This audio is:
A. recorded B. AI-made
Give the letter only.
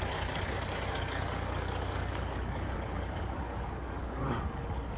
B